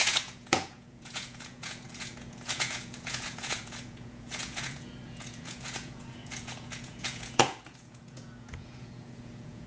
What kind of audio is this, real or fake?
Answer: fake